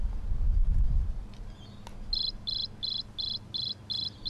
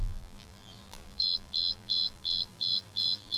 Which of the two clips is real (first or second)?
first